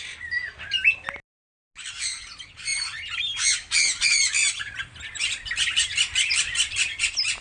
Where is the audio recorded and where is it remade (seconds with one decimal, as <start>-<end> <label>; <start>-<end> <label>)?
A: 0.0-2.7 recorded; 2.7-7.0 remade; 7.0-7.4 recorded